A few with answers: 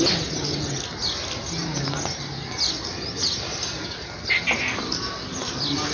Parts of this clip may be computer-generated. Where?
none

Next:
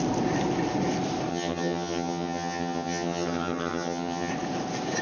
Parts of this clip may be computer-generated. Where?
1.3-4.3 (vocoder, HiFi-GAN)